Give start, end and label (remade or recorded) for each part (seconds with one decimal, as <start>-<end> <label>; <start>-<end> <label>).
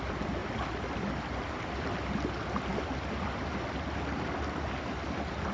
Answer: 0.0-5.5 recorded